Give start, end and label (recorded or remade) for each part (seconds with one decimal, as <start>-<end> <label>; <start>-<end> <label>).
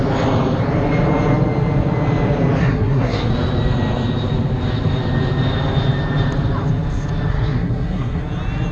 0.0-2.6 recorded; 2.6-3.3 remade; 3.3-7.3 recorded; 7.3-8.2 remade; 8.2-8.7 recorded